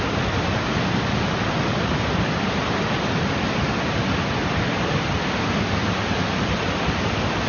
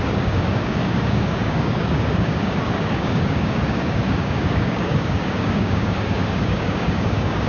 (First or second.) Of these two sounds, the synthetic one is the second